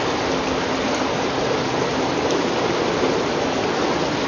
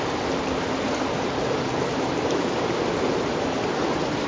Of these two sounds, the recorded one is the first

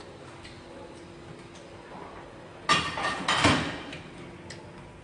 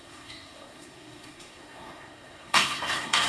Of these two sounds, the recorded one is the first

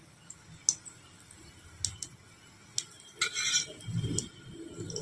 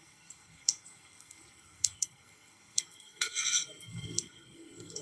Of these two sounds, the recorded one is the first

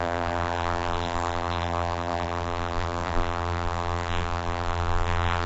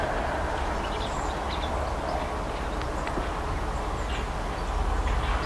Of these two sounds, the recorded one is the second